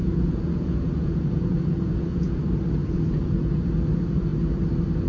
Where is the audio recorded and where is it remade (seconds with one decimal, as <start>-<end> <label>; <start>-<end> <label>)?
0.0-2.4 remade; 2.4-2.8 recorded; 2.8-3.7 remade; 3.7-5.1 recorded